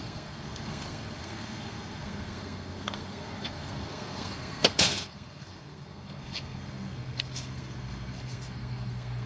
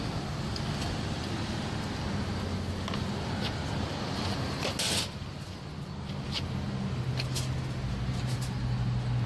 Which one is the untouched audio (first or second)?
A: second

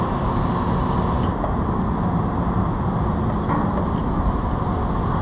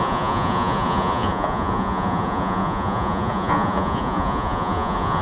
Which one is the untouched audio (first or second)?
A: first